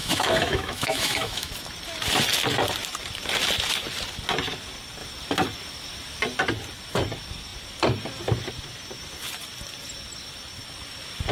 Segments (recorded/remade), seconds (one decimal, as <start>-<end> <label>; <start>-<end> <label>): 0.0-1.5 remade; 1.5-11.3 recorded